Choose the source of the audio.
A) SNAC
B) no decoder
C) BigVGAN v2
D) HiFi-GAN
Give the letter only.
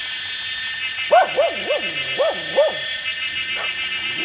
B